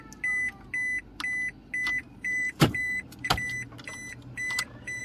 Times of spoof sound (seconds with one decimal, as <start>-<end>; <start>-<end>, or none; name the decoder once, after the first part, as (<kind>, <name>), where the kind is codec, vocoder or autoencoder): 2.0-5.0 (vocoder, BigVGAN v2)